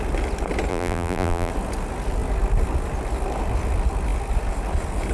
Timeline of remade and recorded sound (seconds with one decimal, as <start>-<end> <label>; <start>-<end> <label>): 0.0-0.7 recorded; 0.7-1.5 remade; 1.5-5.1 recorded